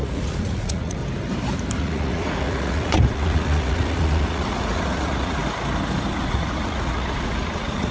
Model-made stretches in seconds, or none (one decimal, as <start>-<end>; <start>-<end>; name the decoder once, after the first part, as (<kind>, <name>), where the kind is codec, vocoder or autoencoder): 0.0-1.0 (vocoder, Vocos); 1.8-5.4; 6.1-7.9